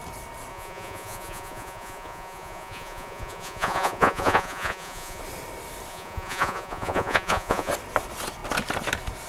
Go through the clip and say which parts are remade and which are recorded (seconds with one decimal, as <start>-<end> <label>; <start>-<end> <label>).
0.0-0.5 recorded; 0.5-5.2 remade; 5.2-5.9 recorded; 5.9-7.7 remade; 7.7-9.3 recorded